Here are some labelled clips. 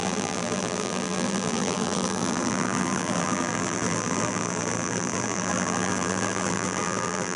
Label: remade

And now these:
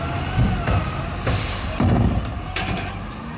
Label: recorded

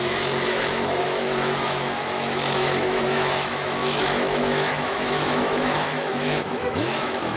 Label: remade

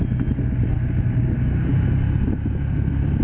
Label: recorded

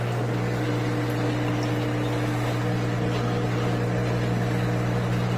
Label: recorded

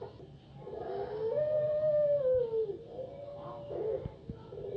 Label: recorded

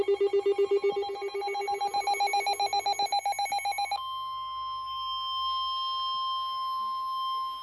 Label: recorded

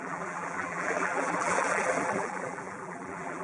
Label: remade